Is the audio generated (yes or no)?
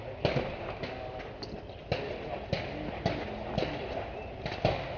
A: no